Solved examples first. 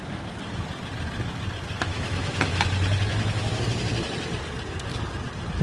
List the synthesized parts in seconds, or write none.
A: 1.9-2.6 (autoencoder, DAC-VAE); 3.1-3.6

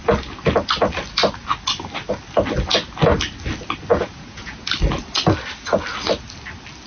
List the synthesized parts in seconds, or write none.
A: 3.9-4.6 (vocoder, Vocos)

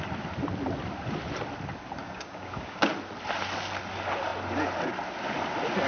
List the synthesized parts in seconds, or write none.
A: 2.0-2.9 (codec, DAC)

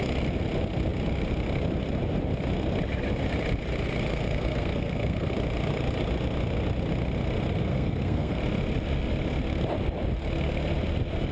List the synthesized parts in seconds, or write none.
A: 4.1-5.3 (codec, SNAC); 7.7-8.4